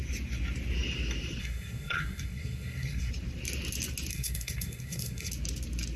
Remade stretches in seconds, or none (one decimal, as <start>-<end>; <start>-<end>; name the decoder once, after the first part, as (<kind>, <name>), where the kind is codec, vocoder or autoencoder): 1.4-3.1 (codec, SNAC); 4.1-5.3